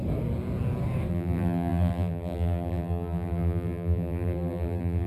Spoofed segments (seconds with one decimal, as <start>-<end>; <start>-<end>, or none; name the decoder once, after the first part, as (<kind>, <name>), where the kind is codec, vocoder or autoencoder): 1.1-5.1 (vocoder, BigVGAN v2)

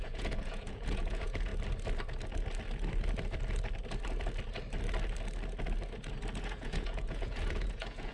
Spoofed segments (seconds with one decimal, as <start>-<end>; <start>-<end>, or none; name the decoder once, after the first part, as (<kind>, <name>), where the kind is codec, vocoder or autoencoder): 0.0-1.5 (vocoder, Vocos); 6.4-8.1

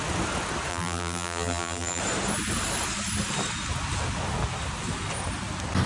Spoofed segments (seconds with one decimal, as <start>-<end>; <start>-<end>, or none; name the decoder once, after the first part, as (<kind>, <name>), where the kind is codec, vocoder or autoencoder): 0.7-2.0 (vocoder, BigVGAN v2)

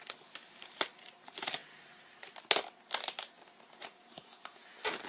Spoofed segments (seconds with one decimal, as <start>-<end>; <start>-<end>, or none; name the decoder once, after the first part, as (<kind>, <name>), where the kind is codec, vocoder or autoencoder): none

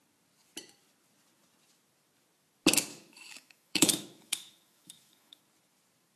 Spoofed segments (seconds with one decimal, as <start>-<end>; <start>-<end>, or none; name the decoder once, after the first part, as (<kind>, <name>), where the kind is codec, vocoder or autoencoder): 2.9-5.4 (autoencoder, DAC-VAE)